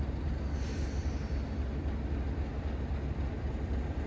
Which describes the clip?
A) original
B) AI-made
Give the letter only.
A